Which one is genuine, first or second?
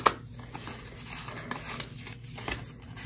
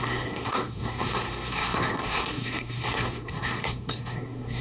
first